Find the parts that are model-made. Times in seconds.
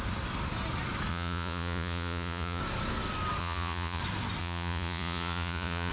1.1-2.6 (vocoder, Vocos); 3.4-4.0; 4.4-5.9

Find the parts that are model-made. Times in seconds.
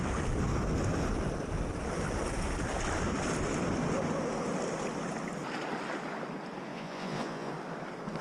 6.7-7.5 (vocoder, Vocos)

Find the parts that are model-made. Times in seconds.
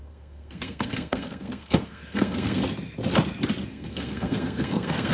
0.0-2.6 (codec, SNAC); 3.7-5.1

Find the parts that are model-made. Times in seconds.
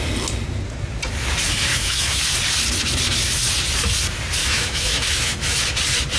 1.7-2.2 (autoencoder, DAC-VAE); 4.4-5.6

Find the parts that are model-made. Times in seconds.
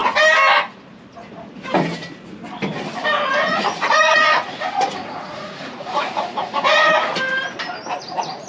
3.3-7.1 (vocoder, Vocos); 8.0-8.5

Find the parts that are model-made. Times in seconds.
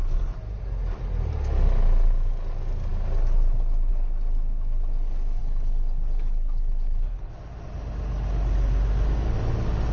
5.4-7.3 (codec, HILCodec)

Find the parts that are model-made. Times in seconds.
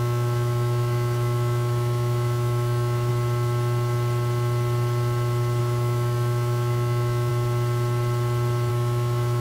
0.0-3.1 (autoencoder, DAC-VAE); 5.6-7.3; 8.7-9.4